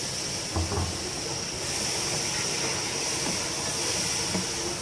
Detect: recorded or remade recorded